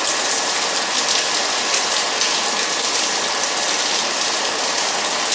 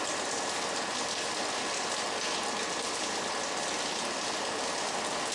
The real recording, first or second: second